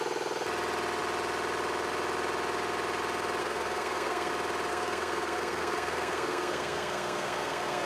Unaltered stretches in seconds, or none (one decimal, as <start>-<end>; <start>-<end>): 0.0-3.4; 4.3-4.7